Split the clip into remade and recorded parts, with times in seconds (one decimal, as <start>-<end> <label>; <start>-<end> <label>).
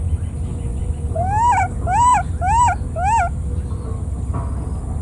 0.0-0.5 recorded; 0.5-1.2 remade; 1.2-5.0 recorded